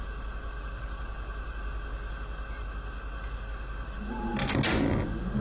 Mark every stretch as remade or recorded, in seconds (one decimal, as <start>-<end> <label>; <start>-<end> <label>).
0.0-5.4 recorded